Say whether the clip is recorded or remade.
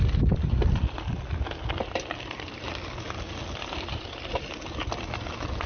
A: recorded